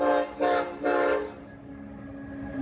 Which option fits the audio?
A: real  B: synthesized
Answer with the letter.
A